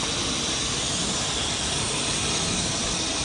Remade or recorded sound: recorded